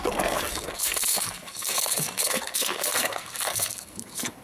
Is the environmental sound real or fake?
fake